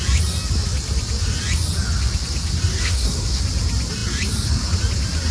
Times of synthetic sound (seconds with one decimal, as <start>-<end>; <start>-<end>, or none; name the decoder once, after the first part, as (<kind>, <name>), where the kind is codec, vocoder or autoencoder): 2.8-3.4 (codec, SNAC)